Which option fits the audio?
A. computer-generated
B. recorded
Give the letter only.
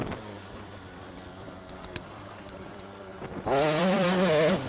A